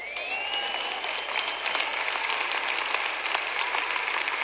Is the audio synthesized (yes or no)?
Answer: no